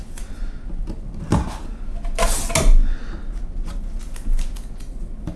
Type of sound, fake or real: real